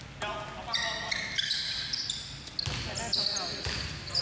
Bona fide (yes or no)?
yes